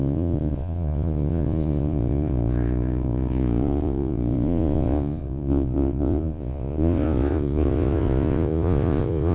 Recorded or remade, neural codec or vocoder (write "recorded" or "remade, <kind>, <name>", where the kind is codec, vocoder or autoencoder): remade, vocoder, Vocos